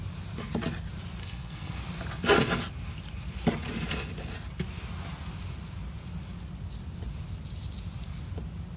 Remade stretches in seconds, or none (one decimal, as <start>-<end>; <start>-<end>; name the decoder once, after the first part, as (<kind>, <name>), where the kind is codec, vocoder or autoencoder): 1.2-1.8 (codec, SNAC)